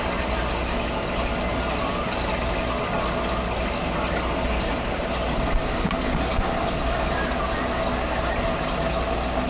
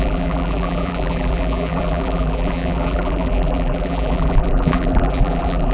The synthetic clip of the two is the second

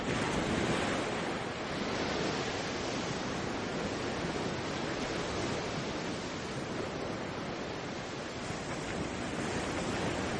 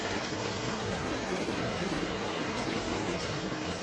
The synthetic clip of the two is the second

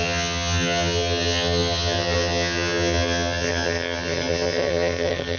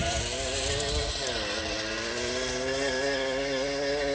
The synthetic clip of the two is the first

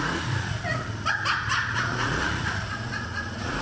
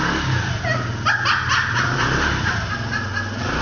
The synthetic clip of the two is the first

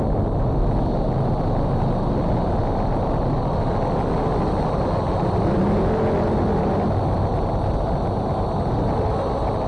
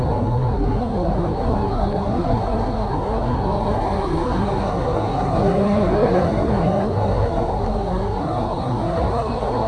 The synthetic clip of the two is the second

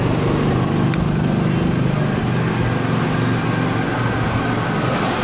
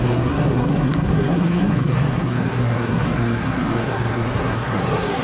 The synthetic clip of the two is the second